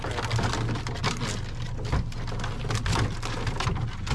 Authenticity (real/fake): real